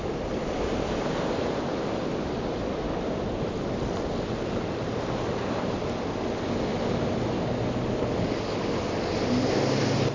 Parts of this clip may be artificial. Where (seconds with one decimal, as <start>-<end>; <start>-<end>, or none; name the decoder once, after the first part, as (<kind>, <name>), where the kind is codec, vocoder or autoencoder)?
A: none